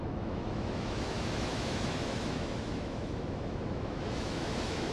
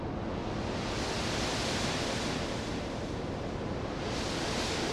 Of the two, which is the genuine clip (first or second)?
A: second